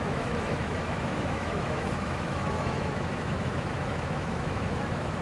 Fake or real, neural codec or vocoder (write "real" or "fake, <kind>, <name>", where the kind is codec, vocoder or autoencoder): fake, autoencoder, DAC-VAE